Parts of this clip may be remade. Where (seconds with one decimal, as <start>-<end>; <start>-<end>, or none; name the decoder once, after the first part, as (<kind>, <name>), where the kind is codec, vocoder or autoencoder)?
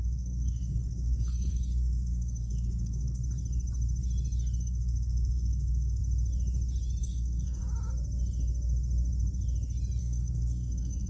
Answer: 0.0-3.2 (codec, SNAC); 4.6-6.0; 7.0-7.6; 10.0-11.1